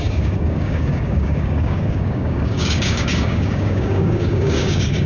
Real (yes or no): no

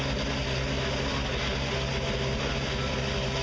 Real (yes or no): yes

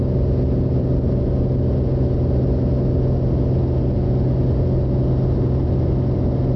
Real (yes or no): yes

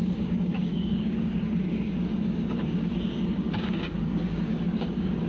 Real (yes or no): no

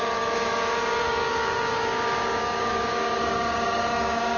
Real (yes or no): no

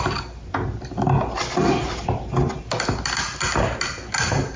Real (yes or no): yes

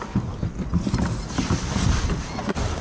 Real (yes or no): yes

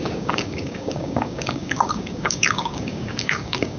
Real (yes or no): no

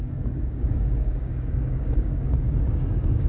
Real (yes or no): no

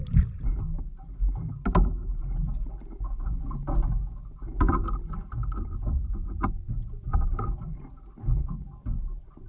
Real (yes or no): yes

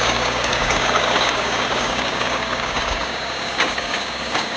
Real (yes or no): no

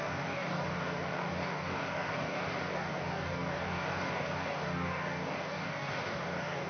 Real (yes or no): no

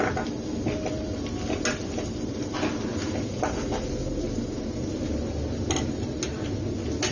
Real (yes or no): yes